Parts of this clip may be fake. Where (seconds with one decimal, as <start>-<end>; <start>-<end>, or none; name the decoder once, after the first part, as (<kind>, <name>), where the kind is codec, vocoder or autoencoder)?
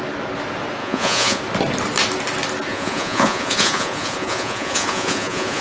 0.8-1.4 (vocoder, Vocos); 2.7-5.6